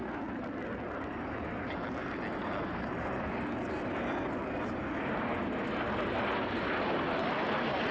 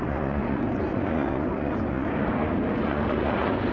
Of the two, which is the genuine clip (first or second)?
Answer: first